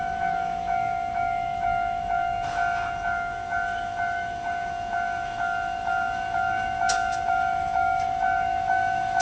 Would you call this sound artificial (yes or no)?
yes